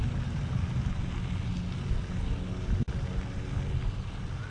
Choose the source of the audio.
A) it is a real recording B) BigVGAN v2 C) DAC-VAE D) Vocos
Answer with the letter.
A